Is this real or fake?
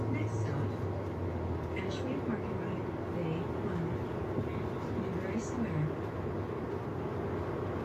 real